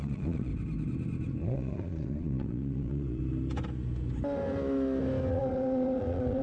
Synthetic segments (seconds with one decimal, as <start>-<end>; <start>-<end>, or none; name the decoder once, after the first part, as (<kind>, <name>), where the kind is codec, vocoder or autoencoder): 0.0-0.5 (vocoder, Vocos); 1.4-3.2; 5.3-6.4